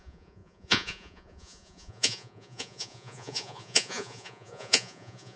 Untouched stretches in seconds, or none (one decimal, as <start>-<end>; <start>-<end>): none